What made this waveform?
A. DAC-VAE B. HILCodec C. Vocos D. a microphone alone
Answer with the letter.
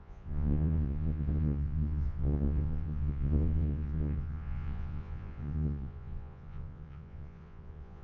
C